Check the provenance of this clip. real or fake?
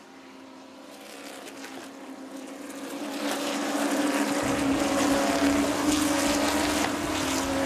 real